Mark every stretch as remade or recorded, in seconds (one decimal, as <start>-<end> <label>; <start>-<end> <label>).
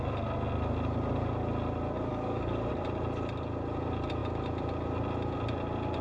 0.0-2.1 recorded; 2.1-2.7 remade; 2.7-6.0 recorded